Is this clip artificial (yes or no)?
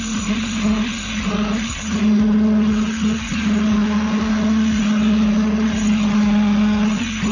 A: no